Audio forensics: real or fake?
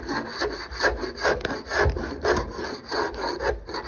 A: real